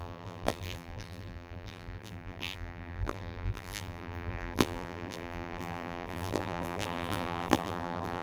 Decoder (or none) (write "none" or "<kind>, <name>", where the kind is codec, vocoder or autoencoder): vocoder, BigVGAN v2